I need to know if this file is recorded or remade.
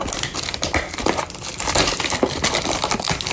remade